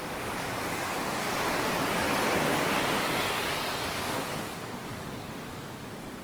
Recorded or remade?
remade